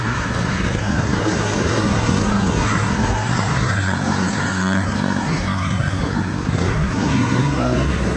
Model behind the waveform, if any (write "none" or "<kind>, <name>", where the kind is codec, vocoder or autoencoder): codec, SNAC